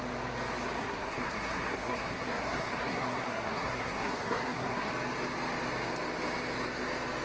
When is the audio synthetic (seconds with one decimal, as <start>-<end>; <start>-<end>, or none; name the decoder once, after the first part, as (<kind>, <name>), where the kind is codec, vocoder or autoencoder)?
0.8-4.9 (codec, SNAC)